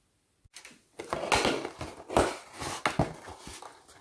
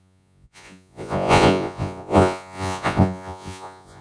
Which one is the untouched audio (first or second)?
first